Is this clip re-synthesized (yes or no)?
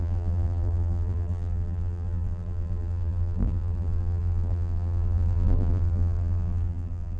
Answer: yes